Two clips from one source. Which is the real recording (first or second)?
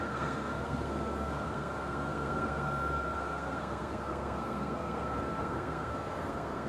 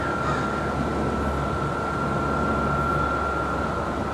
second